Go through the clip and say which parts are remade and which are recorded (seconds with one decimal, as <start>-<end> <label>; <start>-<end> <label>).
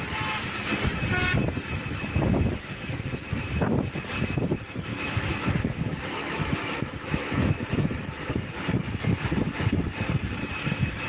0.0-4.9 recorded; 4.9-7.5 remade; 7.5-11.1 recorded